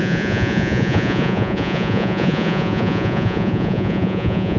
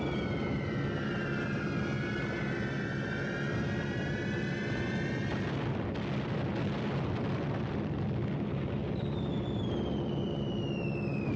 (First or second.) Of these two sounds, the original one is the second